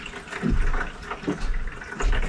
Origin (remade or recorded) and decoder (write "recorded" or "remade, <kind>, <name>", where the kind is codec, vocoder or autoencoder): recorded